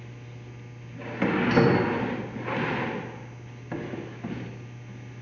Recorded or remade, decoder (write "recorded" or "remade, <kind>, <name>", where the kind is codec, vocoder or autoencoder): recorded